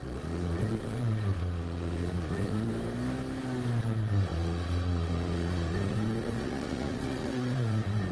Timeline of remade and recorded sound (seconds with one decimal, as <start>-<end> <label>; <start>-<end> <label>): 0.0-2.7 remade; 2.7-3.8 recorded; 3.8-8.1 remade